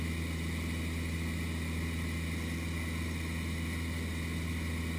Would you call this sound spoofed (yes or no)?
no